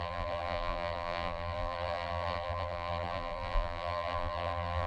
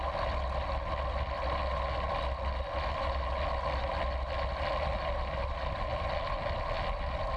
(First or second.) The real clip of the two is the second